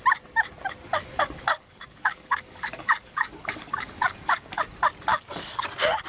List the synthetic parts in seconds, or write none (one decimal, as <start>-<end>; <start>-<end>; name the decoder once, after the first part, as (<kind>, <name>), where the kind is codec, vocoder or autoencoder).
0.9-4.6 (codec, DAC); 5.1-5.6